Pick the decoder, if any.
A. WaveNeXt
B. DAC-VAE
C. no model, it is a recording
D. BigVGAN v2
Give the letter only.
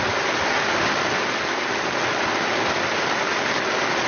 C